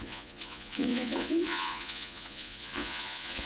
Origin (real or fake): fake